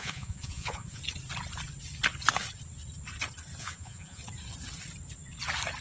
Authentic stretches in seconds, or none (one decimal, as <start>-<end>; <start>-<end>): 1.0-3.6; 4.2-5.8